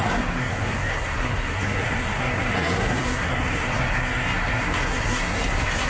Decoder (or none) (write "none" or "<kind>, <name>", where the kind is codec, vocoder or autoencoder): codec, SNAC